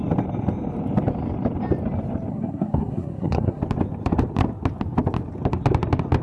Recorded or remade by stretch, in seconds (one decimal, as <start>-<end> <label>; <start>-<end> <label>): 0.0-2.3 recorded; 2.3-3.6 remade; 3.6-6.2 recorded